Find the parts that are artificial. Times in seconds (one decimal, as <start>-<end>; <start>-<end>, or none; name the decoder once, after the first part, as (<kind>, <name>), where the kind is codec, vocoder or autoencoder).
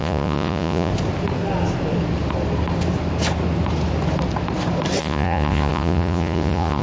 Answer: 0.0-0.9 (vocoder, Vocos); 5.0-6.8